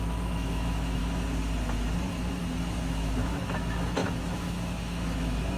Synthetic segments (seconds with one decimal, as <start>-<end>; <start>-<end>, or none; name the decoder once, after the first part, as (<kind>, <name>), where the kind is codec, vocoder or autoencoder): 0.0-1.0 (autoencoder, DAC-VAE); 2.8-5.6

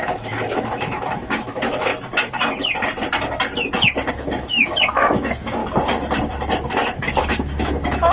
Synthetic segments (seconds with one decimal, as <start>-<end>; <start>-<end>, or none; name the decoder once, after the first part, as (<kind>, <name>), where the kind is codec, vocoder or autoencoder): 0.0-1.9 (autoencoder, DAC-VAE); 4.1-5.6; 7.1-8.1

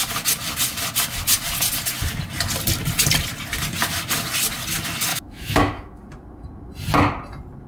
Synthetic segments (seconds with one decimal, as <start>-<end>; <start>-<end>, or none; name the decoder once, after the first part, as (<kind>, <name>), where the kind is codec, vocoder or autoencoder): 5.1-6.0 (autoencoder, DAC-VAE)

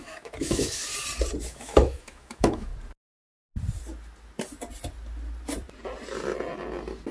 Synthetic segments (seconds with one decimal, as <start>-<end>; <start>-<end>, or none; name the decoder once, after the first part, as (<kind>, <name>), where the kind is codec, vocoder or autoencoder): 0.0-0.9 (autoencoder, DAC-VAE); 1.5-2.7

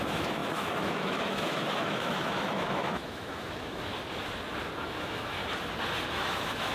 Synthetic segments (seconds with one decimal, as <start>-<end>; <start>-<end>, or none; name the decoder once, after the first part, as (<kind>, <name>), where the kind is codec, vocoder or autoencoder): 0.0-3.9 (autoencoder, DAC-VAE); 4.8-5.4; 6.1-6.7

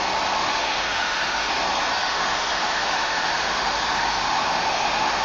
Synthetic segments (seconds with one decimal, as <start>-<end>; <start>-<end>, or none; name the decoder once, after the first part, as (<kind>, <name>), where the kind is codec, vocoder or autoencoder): 0.4-1.5 (autoencoder, DAC-VAE); 2.0-5.2